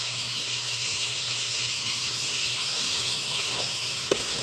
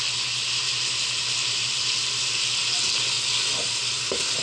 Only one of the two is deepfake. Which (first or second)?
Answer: first